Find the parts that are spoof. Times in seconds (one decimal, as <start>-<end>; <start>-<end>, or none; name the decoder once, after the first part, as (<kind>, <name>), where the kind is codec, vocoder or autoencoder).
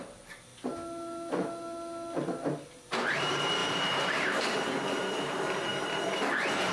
0.0-0.5 (vocoder, BigVGAN v2); 2.8-6.7